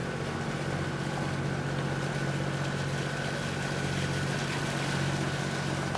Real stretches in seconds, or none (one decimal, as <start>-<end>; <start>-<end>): 0.0-6.0